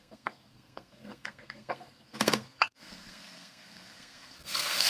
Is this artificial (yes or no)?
yes